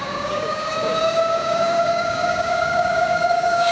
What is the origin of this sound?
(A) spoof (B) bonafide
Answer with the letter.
A